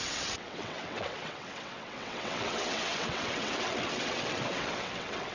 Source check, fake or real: fake